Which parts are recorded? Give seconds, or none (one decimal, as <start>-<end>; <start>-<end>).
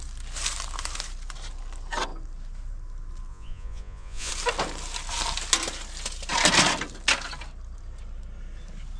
0.0-3.3; 4.3-9.0